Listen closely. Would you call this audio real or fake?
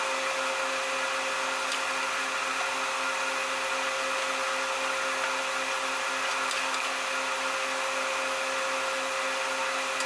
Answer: real